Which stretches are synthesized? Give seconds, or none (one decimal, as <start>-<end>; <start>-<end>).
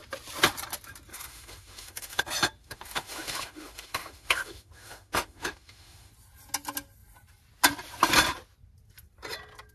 1.1-2.2; 2.6-6.1